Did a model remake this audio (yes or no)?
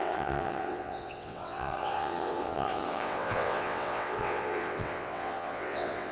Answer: yes